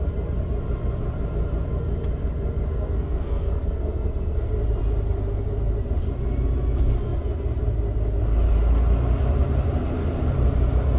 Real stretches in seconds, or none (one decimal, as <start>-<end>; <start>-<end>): 0.0-2.7; 4.5-11.0